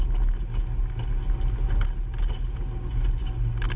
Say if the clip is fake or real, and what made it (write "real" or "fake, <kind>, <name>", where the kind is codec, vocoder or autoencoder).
real